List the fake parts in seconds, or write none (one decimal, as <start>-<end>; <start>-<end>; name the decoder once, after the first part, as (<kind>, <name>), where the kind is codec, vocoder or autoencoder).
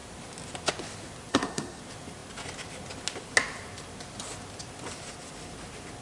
1.3-1.8 (codec, SNAC)